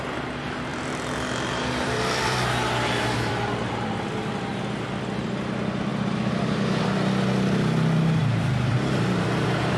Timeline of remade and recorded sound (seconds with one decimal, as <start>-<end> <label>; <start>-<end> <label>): 0.0-0.7 recorded; 0.7-5.3 remade; 5.3-5.9 recorded; 5.9-6.8 remade; 6.8-8.2 recorded; 8.2-9.8 remade